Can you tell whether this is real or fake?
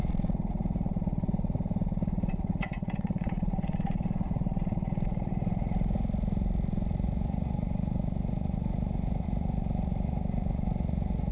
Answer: fake